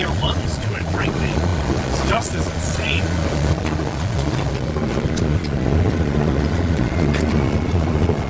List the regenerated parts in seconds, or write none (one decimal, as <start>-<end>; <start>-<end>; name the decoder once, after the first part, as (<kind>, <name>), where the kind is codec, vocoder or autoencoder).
0.0-8.3 (vocoder, Vocos)